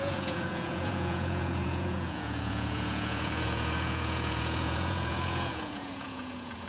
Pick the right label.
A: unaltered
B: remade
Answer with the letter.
B